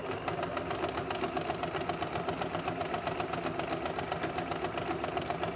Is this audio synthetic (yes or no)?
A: no